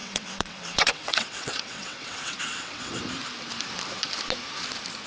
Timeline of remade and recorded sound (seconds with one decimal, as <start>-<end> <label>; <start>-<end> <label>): 0.0-3.0 remade; 3.0-5.1 recorded